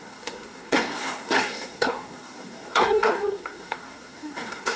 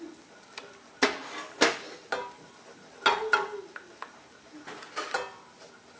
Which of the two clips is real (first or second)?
second